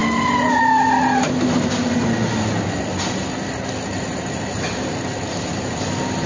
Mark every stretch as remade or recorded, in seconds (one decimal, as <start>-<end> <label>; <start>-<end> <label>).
0.0-6.3 recorded